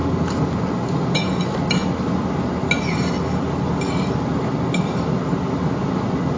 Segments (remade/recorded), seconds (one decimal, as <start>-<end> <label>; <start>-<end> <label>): 0.0-6.4 recorded